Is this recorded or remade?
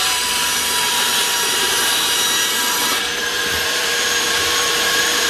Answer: remade